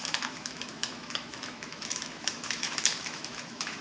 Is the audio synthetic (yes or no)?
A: yes